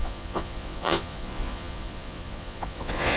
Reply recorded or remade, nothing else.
remade